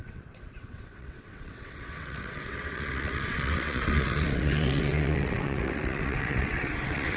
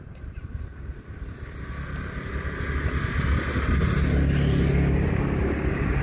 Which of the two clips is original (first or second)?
second